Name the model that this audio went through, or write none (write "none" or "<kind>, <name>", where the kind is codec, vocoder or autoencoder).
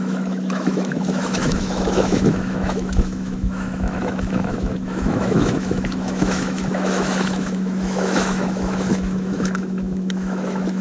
autoencoder, DAC-VAE